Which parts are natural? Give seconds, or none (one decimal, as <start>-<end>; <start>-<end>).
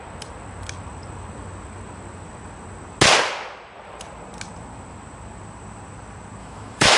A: 0.0-6.4